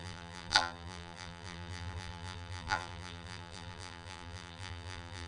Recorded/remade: remade